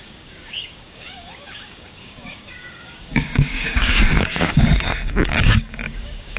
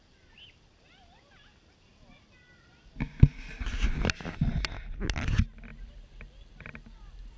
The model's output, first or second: first